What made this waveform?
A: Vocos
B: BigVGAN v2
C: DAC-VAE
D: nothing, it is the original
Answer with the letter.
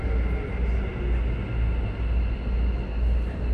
D